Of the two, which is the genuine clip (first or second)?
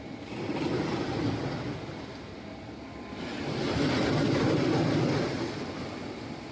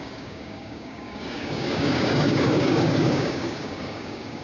first